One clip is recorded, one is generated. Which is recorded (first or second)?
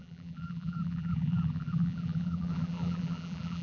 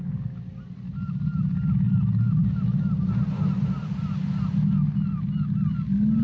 second